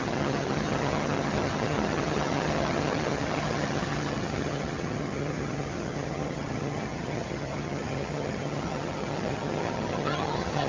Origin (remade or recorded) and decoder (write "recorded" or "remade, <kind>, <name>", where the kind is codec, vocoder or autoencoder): remade, vocoder, HiFi-GAN